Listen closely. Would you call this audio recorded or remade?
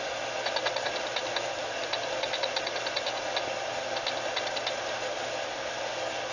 recorded